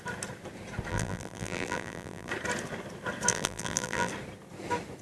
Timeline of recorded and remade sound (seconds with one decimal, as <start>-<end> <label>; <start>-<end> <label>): 0.0-0.9 recorded; 0.9-2.3 remade; 2.3-3.3 recorded; 3.3-4.1 remade; 4.1-5.0 recorded